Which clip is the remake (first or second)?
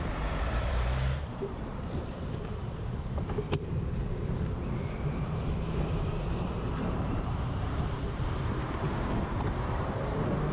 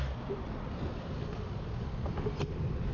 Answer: first